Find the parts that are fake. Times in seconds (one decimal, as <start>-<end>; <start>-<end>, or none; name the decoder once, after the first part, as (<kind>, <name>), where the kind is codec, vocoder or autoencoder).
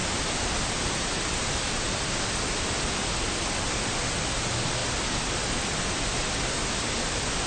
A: none